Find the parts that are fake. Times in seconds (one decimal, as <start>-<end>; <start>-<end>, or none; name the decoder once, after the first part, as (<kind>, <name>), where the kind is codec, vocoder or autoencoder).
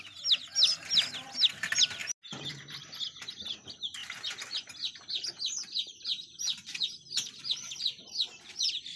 none